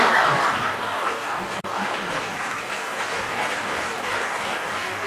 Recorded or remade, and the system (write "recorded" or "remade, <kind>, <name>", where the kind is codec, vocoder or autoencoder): remade, codec, DAC